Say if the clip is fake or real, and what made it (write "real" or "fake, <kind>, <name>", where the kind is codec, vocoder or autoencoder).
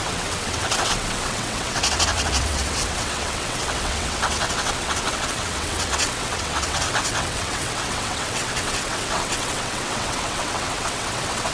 fake, vocoder, WaveNeXt